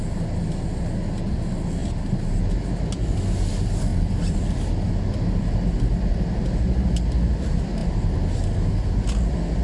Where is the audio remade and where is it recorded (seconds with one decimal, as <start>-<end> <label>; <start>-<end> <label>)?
0.0-9.6 recorded